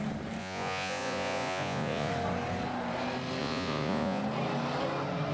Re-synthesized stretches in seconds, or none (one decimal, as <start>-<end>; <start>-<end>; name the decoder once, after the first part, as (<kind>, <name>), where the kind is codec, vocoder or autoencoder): 0.4-2.1 (vocoder, Vocos); 3.4-4.2